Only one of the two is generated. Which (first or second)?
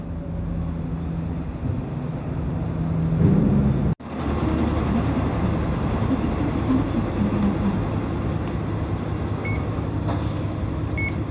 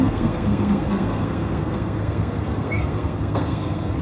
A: second